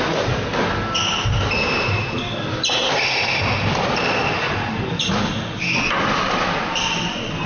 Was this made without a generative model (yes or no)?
yes